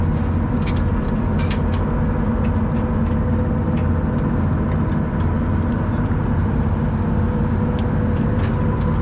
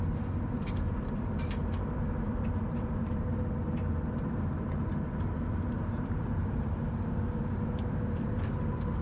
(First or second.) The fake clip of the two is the second